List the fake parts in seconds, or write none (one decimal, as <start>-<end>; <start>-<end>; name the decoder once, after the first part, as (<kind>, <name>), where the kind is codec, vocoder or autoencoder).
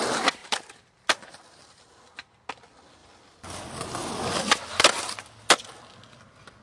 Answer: none